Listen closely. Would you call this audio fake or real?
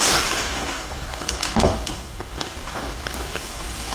fake